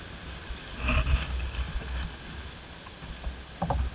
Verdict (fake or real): real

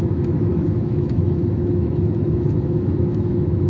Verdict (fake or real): fake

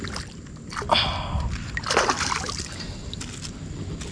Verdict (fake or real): real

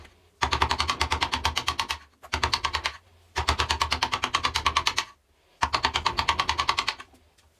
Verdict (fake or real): real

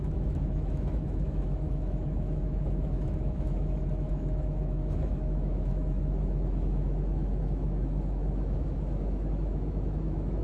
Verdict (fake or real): fake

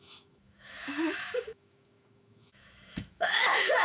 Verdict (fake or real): fake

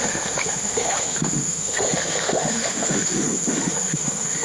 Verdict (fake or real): fake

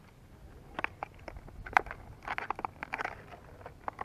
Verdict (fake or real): real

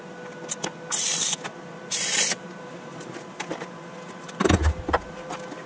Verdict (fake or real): real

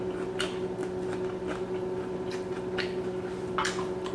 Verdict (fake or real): real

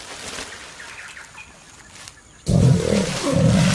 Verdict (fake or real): real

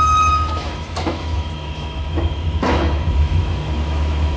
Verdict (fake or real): fake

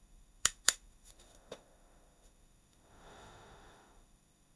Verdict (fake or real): fake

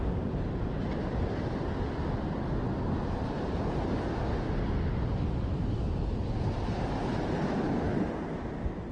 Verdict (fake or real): real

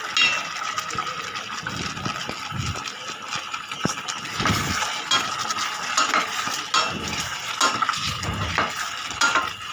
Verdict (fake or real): real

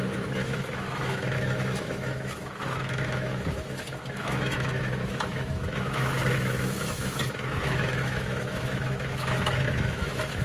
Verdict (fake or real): fake